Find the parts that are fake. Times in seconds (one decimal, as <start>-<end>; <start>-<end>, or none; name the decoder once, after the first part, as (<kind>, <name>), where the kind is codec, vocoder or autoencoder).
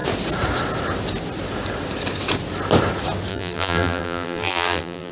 3.3-5.1 (vocoder, BigVGAN v2)